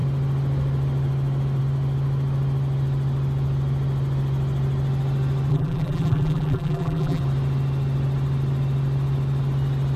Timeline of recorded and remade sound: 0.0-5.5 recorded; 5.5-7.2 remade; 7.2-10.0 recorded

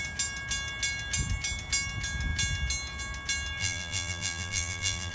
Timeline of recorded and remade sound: 0.0-3.6 recorded; 3.6-5.1 remade

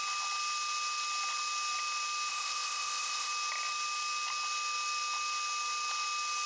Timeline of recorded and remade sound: 0.0-2.3 recorded; 2.3-3.3 remade; 3.3-6.5 recorded